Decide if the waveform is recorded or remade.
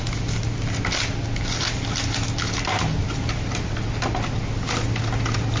recorded